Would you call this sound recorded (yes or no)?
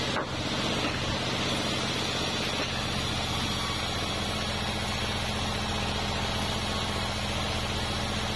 yes